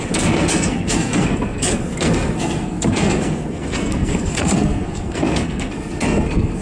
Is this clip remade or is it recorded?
remade